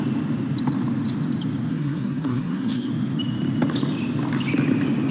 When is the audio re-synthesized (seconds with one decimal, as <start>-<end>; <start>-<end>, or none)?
1.7-2.9